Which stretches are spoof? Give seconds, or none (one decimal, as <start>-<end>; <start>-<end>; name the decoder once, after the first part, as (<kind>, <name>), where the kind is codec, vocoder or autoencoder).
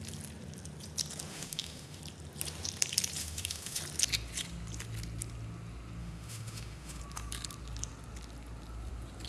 1.3-2.0 (autoencoder, DAC-VAE); 3.2-3.8; 6.0-7.0